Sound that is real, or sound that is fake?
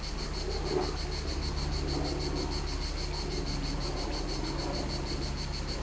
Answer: real